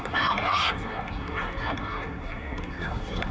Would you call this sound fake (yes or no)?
yes